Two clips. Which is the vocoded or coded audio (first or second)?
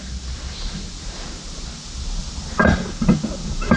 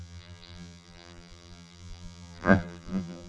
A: second